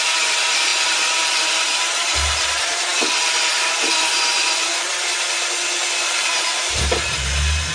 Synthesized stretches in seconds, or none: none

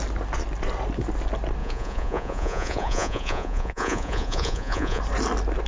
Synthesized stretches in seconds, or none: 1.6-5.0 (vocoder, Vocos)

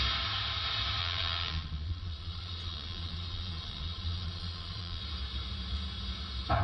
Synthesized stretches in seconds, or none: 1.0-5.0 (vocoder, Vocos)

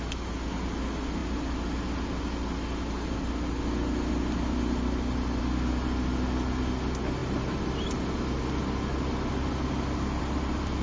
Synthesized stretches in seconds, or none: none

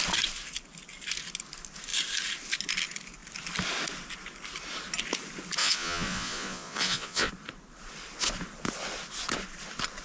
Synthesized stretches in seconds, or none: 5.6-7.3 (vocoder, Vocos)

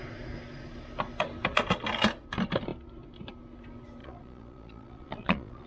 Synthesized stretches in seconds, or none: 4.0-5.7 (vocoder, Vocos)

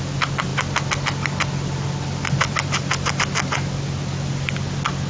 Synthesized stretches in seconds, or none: none